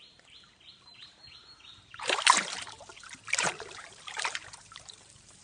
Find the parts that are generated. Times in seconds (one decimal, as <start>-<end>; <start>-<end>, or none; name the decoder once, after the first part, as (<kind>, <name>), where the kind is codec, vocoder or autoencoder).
0.0-5.4 (vocoder, BigVGAN v2)